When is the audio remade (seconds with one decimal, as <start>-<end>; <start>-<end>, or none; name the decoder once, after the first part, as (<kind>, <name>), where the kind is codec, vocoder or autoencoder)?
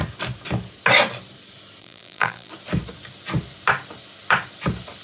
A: 1.8-2.5 (vocoder, BigVGAN v2)